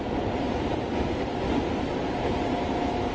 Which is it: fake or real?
fake